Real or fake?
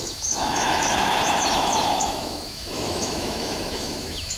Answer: fake